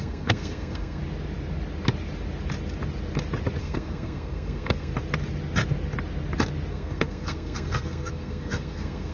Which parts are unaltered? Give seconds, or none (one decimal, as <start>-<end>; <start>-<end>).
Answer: 1.0-3.6; 4.9-6.7

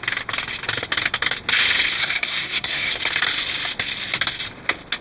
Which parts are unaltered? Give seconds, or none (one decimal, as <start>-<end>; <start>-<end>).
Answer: 0.0-2.0; 2.9-5.0

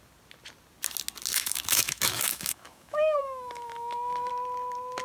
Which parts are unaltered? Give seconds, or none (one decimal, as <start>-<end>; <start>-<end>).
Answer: 0.0-1.3; 4.3-5.0